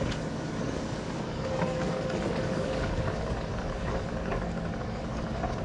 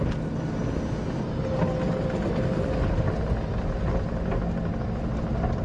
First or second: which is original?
second